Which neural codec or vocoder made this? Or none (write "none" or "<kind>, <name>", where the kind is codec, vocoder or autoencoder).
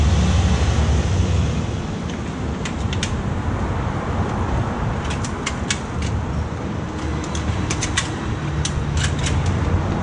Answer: none